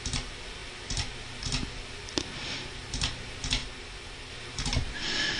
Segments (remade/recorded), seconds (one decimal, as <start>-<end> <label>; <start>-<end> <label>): 0.0-5.4 recorded